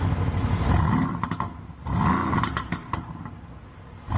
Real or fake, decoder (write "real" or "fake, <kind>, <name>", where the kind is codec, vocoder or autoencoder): real